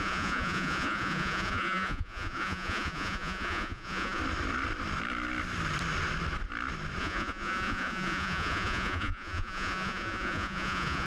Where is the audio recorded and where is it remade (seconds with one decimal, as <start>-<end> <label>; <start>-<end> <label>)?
0.0-4.2 remade; 4.2-7.0 recorded; 7.0-11.1 remade